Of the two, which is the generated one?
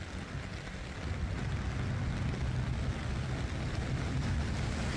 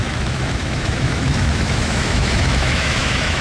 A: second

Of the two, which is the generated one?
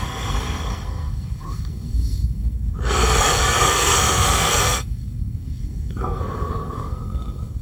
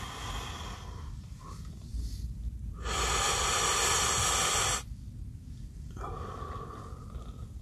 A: first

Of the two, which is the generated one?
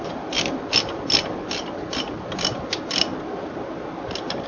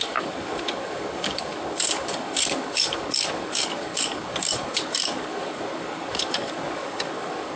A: second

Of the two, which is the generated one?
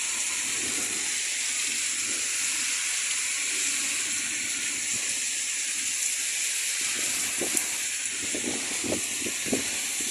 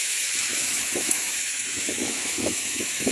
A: second